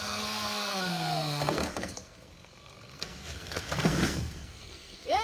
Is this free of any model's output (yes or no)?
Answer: no